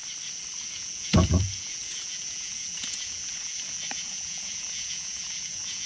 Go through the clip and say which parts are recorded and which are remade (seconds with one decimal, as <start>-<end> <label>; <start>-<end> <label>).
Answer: 0.0-0.6 recorded; 0.6-5.9 remade